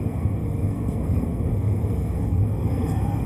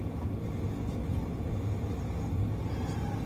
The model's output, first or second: first